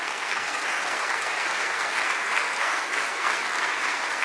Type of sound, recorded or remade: remade